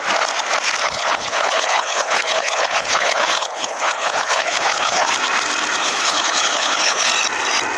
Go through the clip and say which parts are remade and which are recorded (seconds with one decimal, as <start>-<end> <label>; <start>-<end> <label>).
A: 0.0-0.8 recorded; 0.8-5.1 remade; 5.1-5.8 recorded; 5.8-7.1 remade; 7.1-7.8 recorded